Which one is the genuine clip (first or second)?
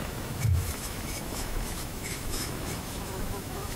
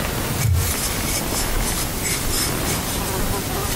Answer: second